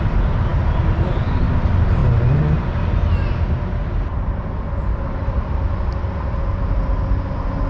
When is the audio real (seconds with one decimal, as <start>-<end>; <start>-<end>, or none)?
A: 0.0-7.7